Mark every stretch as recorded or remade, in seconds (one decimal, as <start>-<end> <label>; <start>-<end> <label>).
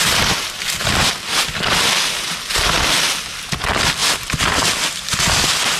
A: 0.0-5.8 recorded